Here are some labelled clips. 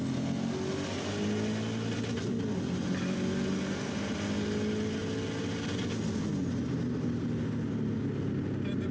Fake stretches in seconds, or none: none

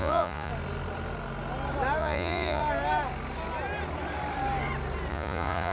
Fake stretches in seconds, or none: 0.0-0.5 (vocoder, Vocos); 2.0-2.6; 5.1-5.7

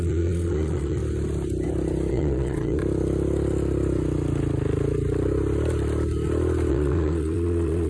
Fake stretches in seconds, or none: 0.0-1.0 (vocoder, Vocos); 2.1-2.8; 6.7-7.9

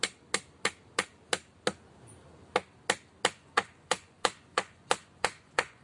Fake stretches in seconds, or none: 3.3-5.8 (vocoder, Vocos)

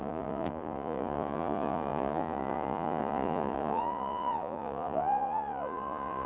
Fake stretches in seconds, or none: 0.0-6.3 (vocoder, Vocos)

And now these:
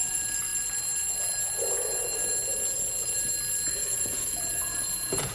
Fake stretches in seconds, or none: 0.0-0.5 (vocoder, Vocos); 3.7-5.3

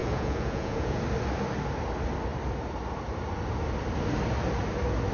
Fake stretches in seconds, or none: 0.0-1.0 (vocoder, Vocos)